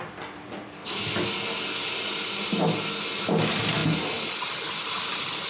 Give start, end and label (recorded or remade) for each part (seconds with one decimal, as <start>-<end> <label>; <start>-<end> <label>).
0.0-5.5 recorded